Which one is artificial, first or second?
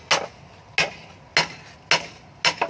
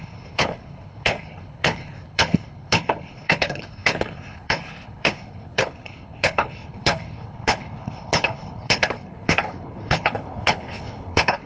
second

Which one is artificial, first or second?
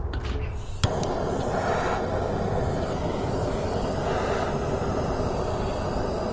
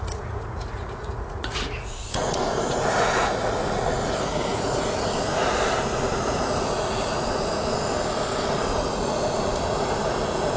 second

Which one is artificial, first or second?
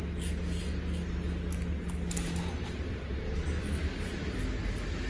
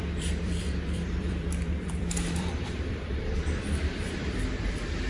second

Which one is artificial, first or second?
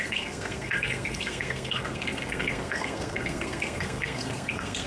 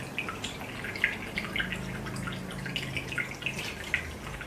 first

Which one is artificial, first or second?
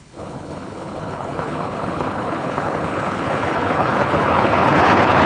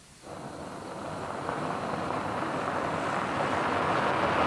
first